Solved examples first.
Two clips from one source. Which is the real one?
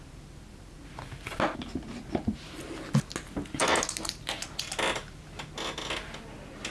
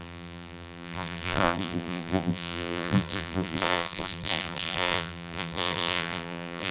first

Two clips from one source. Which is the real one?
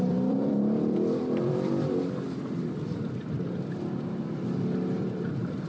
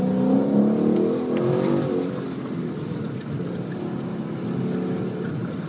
second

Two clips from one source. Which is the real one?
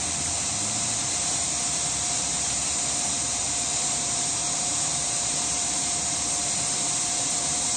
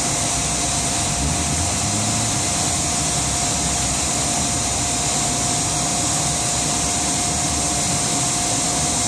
second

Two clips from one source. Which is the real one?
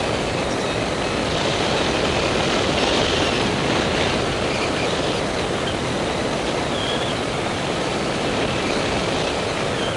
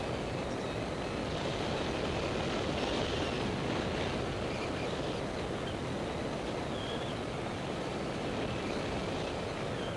second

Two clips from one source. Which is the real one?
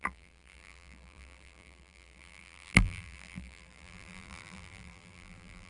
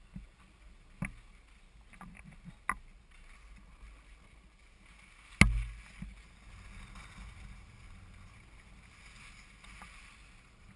second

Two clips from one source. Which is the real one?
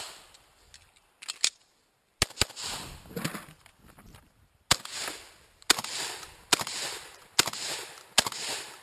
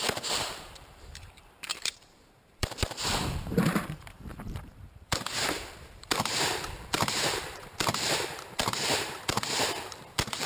first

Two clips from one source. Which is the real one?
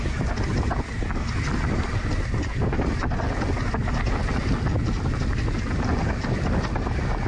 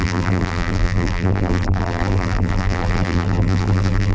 first